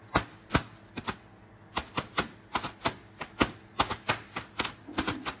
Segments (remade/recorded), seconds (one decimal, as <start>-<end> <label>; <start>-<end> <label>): 0.0-5.4 recorded